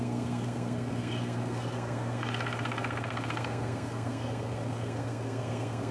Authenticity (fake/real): fake